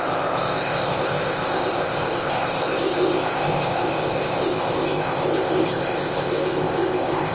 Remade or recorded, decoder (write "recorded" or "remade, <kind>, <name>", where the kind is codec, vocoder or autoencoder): remade, codec, ZipCodec